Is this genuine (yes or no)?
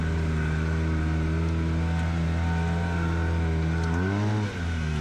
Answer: yes